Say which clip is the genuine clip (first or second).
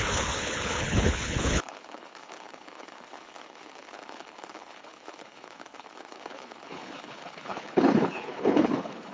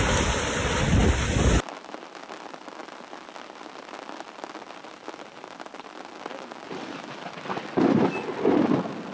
second